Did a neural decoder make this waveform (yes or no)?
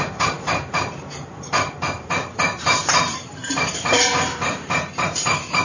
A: yes